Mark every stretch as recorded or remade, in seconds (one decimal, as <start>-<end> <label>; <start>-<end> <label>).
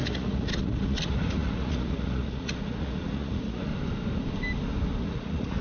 0.0-3.7 remade; 3.7-5.0 recorded; 5.0-5.6 remade